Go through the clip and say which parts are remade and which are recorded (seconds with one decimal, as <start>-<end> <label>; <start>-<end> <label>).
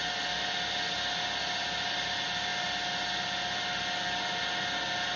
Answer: 0.0-5.2 recorded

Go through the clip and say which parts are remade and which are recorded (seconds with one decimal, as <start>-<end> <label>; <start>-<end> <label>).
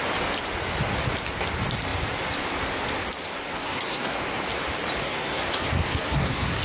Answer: 0.0-3.4 recorded; 3.4-4.2 remade; 4.2-5.0 recorded; 5.0-6.6 remade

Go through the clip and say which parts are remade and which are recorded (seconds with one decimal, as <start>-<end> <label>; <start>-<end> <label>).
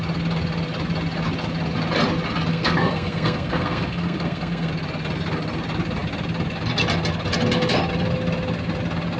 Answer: 0.0-2.5 recorded; 2.5-4.7 remade; 4.7-9.2 recorded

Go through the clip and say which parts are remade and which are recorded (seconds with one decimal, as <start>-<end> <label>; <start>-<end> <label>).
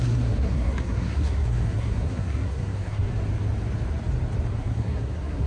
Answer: 0.0-3.1 remade; 3.1-4.5 recorded; 4.5-5.5 remade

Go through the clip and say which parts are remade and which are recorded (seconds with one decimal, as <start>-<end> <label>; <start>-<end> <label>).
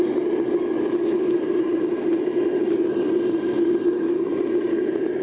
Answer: 0.0-5.2 recorded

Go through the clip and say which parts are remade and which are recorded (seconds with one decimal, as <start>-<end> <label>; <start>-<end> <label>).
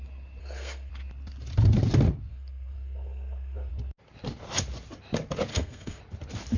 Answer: 0.0-0.4 recorded; 0.4-0.9 remade; 0.9-2.3 recorded; 2.3-3.7 remade; 3.7-5.5 recorded; 5.5-6.0 remade; 6.0-6.6 recorded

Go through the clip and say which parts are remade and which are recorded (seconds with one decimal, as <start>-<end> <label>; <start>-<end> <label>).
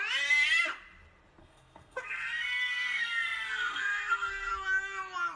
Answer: 0.0-1.4 recorded; 1.4-4.5 remade; 4.5-5.4 recorded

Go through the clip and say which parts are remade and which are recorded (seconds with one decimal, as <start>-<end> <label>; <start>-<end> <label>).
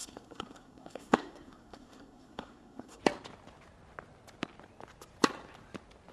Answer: 0.0-3.0 remade; 3.0-6.1 recorded